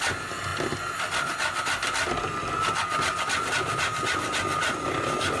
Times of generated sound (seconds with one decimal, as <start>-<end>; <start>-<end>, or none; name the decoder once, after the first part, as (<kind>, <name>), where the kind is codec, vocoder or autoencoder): none